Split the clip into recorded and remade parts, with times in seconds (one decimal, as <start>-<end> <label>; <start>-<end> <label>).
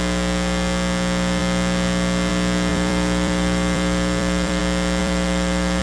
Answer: 0.0-2.7 recorded; 2.7-4.6 remade; 4.6-5.0 recorded; 5.0-5.8 remade